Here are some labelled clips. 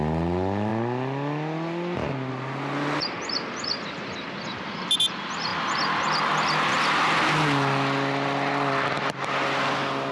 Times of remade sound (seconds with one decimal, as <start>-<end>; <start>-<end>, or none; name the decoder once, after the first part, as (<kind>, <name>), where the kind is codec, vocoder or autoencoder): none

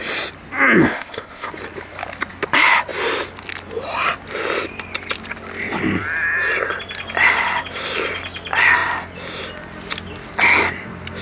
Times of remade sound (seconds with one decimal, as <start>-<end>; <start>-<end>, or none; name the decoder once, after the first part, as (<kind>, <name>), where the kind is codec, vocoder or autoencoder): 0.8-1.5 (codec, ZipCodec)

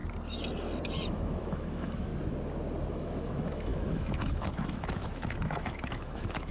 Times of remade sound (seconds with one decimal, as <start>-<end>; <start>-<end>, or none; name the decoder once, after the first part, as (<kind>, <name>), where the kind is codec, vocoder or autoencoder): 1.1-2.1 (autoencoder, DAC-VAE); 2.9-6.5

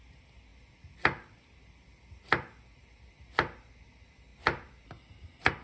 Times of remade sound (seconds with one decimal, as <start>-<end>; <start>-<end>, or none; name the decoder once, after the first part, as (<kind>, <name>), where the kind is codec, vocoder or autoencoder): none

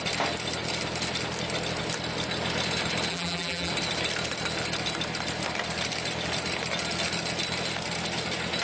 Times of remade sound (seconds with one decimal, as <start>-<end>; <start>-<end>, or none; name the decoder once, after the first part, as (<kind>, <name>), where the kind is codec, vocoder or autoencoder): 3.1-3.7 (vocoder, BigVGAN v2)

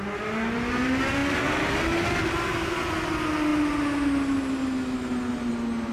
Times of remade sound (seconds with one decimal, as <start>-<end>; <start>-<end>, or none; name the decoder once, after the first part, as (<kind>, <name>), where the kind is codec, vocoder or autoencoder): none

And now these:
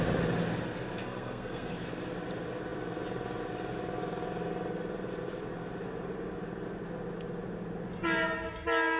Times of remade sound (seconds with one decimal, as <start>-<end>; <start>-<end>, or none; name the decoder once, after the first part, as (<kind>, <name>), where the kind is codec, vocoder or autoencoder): 1.0-1.7 (codec, SNAC)

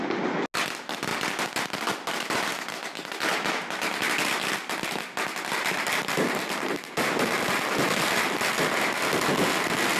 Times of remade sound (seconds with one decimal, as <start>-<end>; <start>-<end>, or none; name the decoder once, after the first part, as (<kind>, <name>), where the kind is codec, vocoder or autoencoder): none